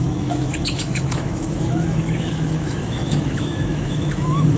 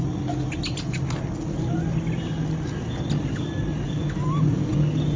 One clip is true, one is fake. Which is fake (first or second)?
first